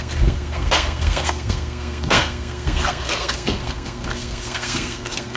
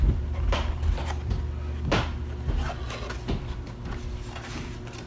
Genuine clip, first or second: second